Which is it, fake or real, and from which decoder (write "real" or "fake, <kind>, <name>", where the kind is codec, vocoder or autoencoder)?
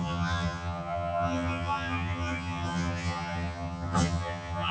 fake, vocoder, HiFi-GAN